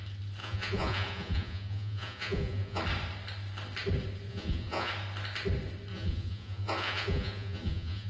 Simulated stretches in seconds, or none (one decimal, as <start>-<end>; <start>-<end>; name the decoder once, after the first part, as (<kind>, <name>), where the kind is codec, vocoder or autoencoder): 0.4-2.8 (vocoder, Vocos); 4.3-4.9; 5.9-8.1